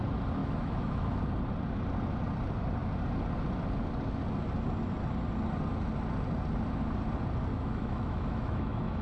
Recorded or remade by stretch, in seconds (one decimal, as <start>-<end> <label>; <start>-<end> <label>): 0.0-0.4 recorded; 0.4-1.2 remade; 1.2-7.5 recorded; 7.5-9.0 remade